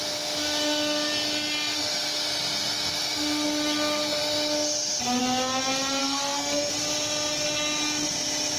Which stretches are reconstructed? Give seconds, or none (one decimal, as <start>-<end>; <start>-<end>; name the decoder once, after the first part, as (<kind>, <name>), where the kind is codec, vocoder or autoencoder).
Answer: 6.0-6.7 (codec, SNAC)